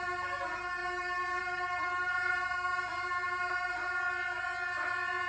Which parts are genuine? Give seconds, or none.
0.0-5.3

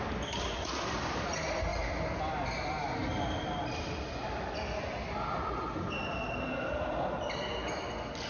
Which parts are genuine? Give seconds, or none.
0.0-8.3

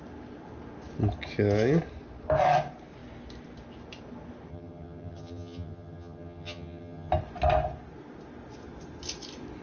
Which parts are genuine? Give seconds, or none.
0.0-4.5; 7.1-9.6

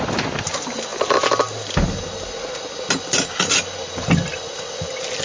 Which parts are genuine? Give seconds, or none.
0.0-5.2

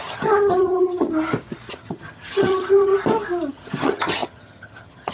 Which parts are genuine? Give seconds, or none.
1.1-1.7; 2.9-3.5

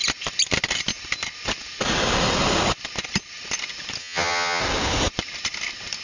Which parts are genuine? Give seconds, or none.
0.0-4.0; 4.6-6.0